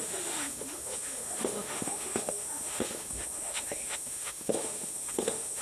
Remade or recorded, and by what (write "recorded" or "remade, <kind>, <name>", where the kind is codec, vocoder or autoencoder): remade, autoencoder, DAC-VAE